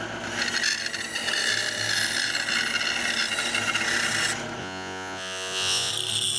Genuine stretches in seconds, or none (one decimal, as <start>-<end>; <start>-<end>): 0.0-4.6; 5.9-6.4